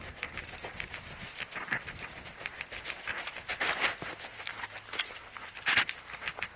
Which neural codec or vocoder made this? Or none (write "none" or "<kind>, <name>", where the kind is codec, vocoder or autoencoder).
none